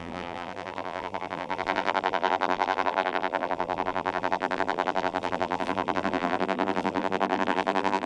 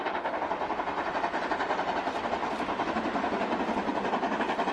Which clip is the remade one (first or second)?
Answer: first